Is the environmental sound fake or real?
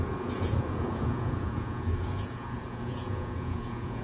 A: fake